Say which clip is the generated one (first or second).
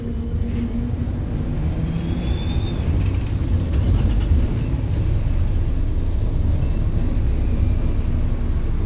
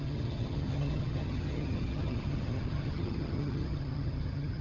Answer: second